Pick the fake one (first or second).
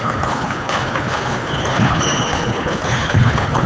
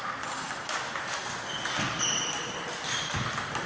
first